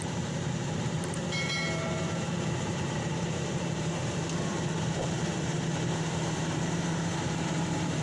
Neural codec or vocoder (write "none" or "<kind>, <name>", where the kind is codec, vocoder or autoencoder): vocoder, BigVGAN v2